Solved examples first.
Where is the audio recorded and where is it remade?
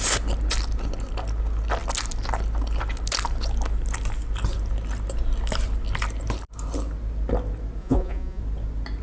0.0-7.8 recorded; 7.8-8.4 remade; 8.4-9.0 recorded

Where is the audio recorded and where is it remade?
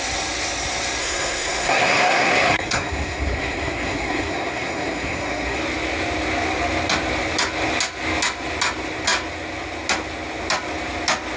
0.0-1.0 recorded; 1.0-5.6 remade; 5.6-11.4 recorded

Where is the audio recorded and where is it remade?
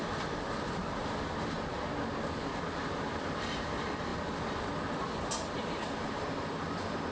0.0-0.8 remade; 0.8-3.1 recorded; 3.1-4.1 remade; 4.1-5.1 recorded; 5.1-7.1 remade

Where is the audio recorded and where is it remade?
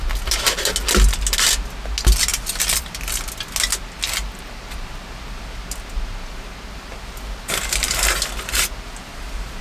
0.0-9.6 recorded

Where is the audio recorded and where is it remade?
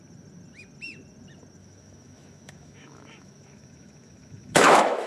0.0-1.6 recorded; 1.6-5.1 remade